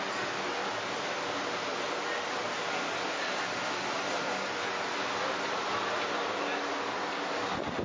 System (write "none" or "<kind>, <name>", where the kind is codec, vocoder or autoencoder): none